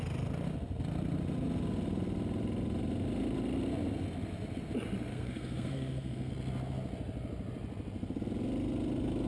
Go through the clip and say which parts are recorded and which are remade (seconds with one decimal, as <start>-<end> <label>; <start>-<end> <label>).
0.0-5.1 recorded; 5.1-6.3 remade; 6.3-9.3 recorded